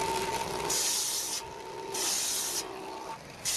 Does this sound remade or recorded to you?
recorded